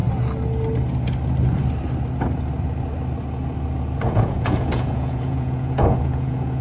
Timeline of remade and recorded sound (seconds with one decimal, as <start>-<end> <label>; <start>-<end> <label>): 0.0-4.0 recorded; 4.0-6.6 remade